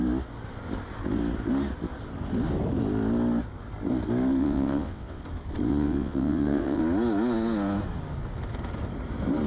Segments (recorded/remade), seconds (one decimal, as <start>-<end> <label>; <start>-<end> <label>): 0.0-4.4 recorded; 4.4-5.2 remade; 5.2-5.7 recorded; 5.7-6.8 remade; 6.8-9.5 recorded